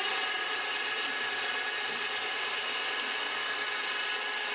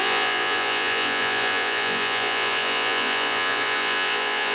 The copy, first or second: second